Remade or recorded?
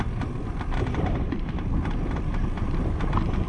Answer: remade